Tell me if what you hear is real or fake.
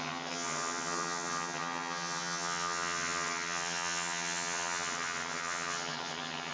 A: fake